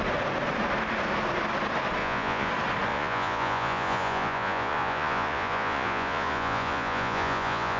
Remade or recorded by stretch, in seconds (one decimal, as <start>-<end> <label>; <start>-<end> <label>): 0.0-2.0 recorded; 2.0-2.5 remade; 2.5-2.9 recorded; 2.9-7.8 remade